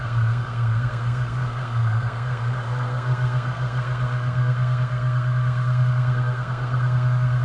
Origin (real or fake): fake